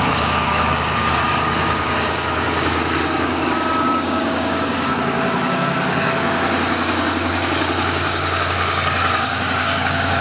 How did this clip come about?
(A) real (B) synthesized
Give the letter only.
B